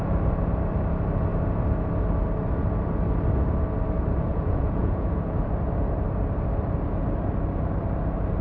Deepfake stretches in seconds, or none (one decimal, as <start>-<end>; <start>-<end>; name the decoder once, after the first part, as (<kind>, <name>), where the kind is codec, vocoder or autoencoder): 4.3-5.2 (vocoder, Vocos)